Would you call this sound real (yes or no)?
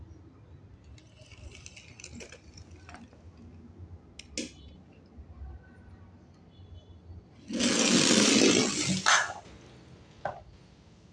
yes